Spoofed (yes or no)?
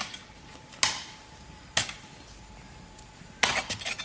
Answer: no